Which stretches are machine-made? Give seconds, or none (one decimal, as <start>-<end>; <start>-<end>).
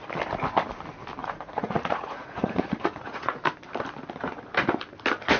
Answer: 1.2-3.4